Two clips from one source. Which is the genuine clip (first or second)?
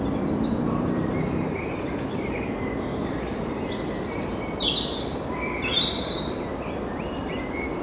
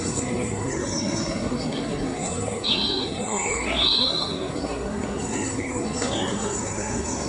first